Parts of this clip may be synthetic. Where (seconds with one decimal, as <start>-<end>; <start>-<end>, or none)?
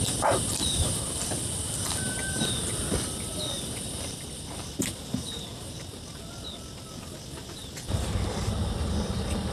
0.0-9.5